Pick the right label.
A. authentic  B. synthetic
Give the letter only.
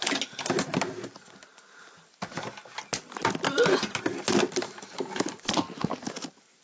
A